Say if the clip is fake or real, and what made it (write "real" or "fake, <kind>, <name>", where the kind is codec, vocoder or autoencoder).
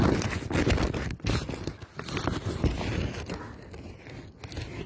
real